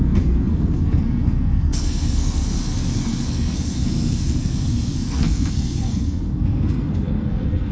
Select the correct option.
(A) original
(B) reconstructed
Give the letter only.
B